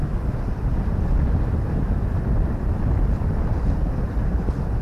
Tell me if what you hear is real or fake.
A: real